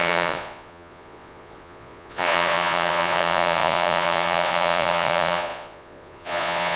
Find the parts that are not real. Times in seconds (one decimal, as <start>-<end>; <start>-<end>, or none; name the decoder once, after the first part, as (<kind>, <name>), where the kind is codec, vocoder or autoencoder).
0.0-6.8 (vocoder, Vocos)